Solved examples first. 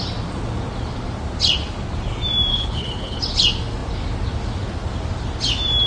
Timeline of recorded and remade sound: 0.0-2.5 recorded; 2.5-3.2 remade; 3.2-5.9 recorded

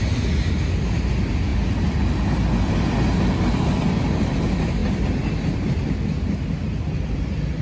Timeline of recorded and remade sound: 0.0-7.6 recorded

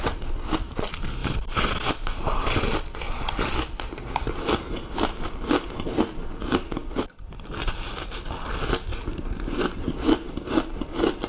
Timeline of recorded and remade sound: 0.0-11.3 recorded